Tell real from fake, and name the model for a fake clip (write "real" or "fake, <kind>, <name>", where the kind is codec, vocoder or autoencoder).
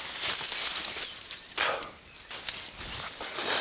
real